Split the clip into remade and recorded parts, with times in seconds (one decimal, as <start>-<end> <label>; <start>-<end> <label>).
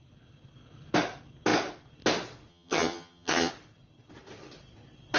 0.0-2.5 recorded; 2.5-3.5 remade; 3.5-5.2 recorded